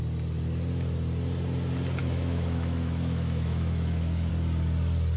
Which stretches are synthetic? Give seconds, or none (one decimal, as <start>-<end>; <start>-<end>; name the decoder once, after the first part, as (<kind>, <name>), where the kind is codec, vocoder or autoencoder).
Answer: 2.0-4.3 (autoencoder, DAC-VAE)